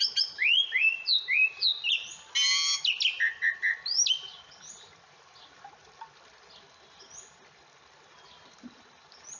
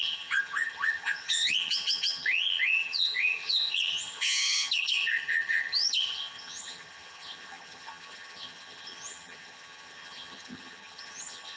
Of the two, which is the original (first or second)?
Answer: first